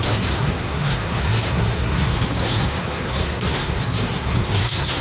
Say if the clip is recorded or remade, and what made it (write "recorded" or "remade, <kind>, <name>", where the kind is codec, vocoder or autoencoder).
remade, codec, SNAC